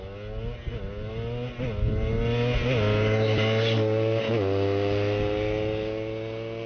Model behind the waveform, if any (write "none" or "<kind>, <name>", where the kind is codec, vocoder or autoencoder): none